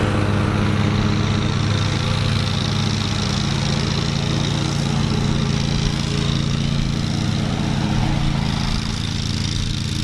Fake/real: real